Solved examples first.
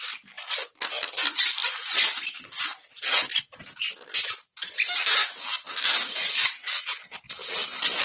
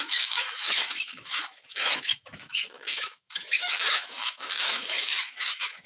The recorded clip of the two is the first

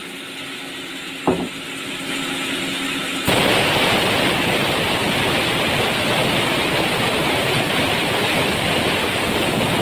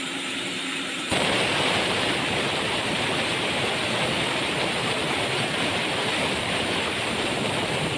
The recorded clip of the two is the first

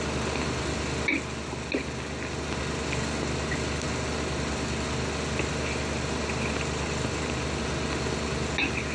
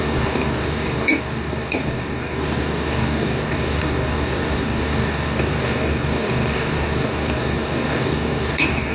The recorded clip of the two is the first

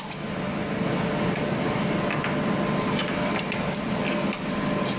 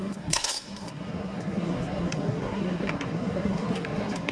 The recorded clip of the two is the first